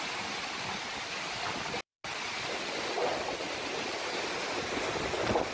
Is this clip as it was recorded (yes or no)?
yes